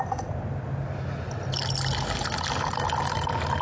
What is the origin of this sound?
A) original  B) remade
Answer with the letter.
A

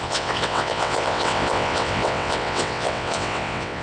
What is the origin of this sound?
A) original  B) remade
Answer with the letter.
B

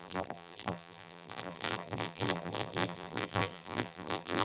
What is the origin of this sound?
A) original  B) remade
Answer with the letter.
B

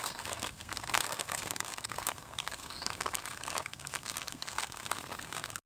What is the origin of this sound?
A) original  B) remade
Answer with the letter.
B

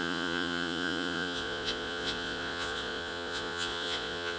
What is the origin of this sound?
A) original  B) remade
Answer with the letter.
B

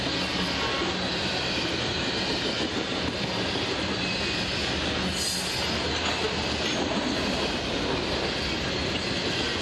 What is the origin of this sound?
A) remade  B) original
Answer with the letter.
B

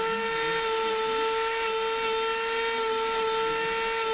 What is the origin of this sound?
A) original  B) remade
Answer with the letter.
A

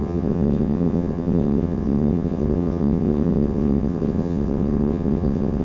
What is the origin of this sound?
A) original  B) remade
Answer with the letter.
B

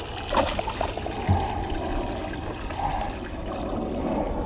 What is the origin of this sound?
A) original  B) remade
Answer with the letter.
A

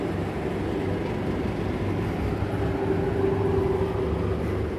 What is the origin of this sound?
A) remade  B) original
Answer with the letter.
B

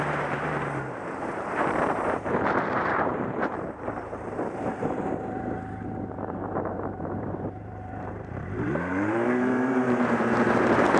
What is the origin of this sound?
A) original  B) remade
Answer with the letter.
B